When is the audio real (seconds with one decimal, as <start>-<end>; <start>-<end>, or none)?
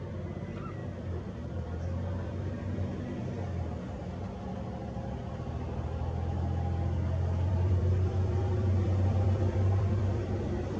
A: 4.0-7.5